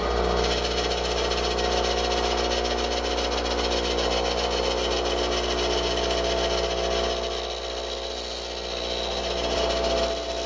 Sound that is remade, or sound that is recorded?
recorded